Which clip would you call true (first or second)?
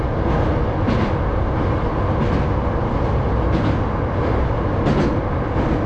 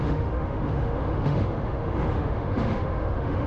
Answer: first